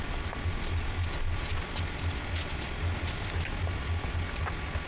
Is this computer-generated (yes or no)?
no